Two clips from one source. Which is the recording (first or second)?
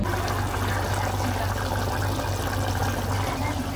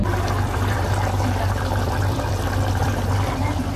first